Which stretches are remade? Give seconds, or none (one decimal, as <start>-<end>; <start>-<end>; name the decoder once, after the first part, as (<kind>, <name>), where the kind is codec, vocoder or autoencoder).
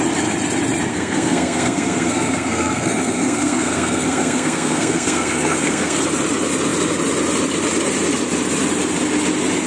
0.9-6.0 (codec, SNAC)